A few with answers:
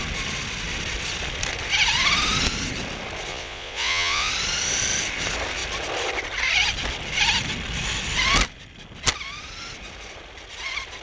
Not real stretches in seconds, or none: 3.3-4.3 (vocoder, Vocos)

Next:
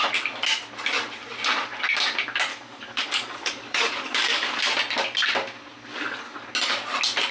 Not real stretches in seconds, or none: 2.5-4.6 (codec, DAC); 5.9-6.5